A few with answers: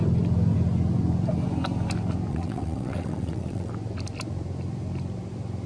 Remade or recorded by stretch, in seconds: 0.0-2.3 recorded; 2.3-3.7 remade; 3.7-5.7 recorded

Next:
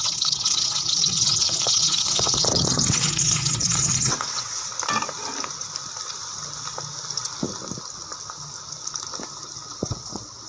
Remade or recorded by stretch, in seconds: 0.0-4.7 remade; 4.7-9.7 recorded; 9.7-10.5 remade

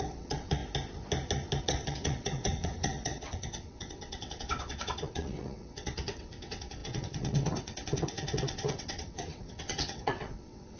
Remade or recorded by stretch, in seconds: 0.0-0.6 remade; 0.6-1.6 recorded; 1.6-10.8 remade

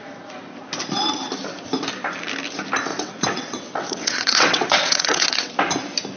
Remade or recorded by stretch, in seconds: 0.0-2.9 recorded; 2.9-5.5 remade; 5.5-6.2 recorded

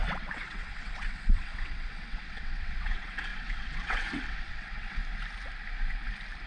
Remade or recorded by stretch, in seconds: 0.0-5.0 remade; 5.0-6.5 recorded

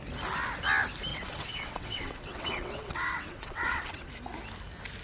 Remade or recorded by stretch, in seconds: 0.0-1.1 recorded; 1.1-4.1 remade; 4.1-5.0 recorded

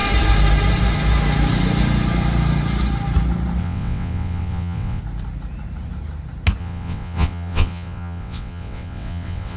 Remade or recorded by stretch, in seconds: 0.0-3.6 recorded; 3.6-5.0 remade; 5.0-6.6 recorded; 6.6-9.6 remade